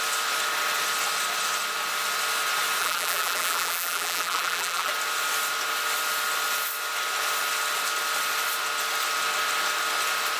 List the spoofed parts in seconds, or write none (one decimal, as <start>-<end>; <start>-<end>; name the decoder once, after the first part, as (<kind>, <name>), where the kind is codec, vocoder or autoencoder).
2.8-4.9 (vocoder, BigVGAN v2)